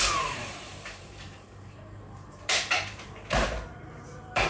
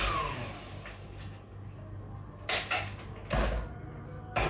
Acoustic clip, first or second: second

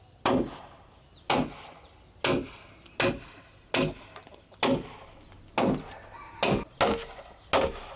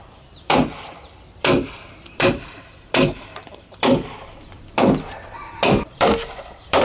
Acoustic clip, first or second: first